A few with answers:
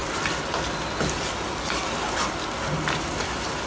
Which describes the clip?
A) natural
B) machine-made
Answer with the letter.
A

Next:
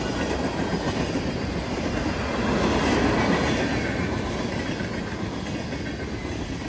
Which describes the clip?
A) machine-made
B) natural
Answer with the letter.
B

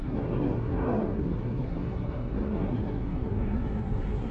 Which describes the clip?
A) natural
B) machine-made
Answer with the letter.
B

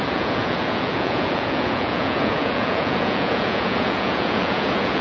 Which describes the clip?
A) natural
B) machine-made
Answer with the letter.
B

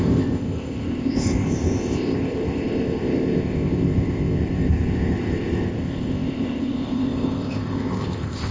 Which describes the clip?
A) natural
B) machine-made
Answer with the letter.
B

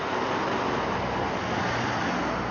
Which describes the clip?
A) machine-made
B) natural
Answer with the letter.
B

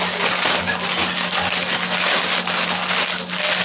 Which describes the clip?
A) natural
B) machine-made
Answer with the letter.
A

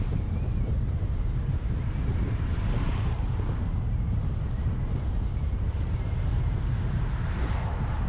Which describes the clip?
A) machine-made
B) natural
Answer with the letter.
A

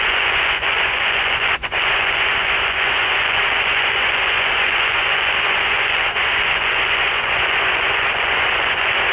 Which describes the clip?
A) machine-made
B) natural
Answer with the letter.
A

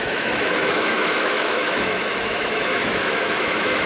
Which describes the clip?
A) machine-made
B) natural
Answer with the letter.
A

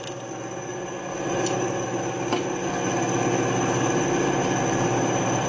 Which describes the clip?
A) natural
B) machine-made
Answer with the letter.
A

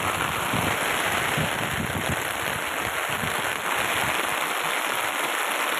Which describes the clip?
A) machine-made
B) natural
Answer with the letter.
B